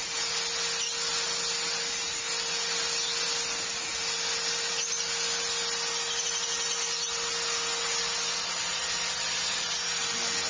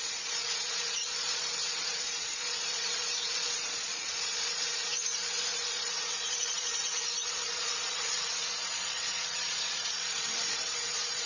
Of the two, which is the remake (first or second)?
second